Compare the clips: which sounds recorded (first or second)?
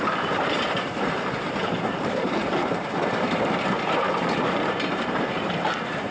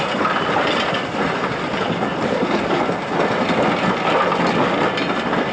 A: second